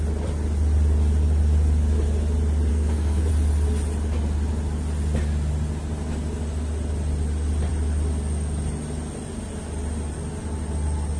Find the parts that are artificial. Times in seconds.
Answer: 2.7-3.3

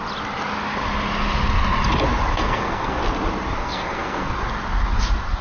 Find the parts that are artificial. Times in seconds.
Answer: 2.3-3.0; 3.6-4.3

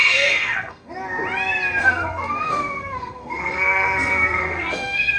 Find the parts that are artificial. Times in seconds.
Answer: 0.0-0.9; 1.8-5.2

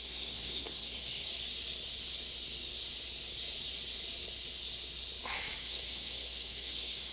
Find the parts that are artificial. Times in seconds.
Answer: 0.0-1.3; 5.6-7.1